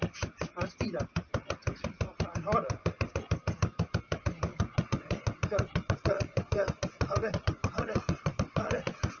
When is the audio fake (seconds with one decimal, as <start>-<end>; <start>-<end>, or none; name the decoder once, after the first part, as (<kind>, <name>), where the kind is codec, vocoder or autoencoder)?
4.5-8.7 (vocoder, WaveNeXt)